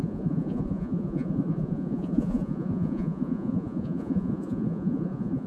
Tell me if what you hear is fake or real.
fake